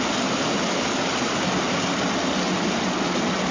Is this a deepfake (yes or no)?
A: no